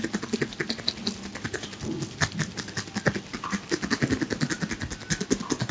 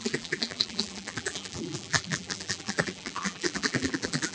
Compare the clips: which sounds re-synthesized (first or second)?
second